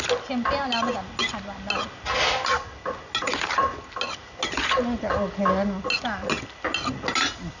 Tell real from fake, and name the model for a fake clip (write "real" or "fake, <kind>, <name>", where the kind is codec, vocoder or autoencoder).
real